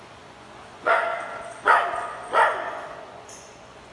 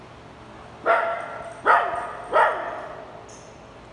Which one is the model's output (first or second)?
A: first